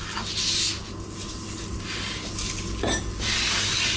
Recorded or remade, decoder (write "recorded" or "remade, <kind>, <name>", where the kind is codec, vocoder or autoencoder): recorded